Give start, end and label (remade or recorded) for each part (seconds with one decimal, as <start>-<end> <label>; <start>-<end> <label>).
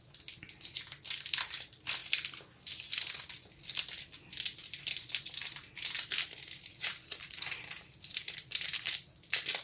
0.0-6.7 recorded; 6.7-9.2 remade; 9.2-9.6 recorded